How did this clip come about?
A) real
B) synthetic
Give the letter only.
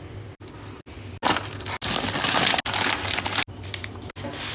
A